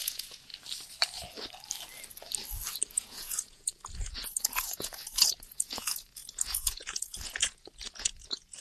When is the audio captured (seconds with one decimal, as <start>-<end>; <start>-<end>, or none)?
0.5-2.9